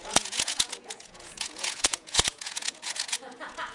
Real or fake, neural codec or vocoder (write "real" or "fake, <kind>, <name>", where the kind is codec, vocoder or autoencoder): fake, vocoder, Vocos